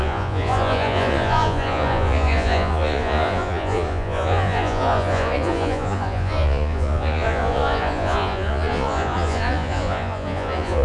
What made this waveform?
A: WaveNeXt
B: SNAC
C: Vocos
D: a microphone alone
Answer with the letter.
C